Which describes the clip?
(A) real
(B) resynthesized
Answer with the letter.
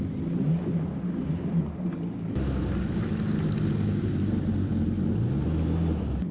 A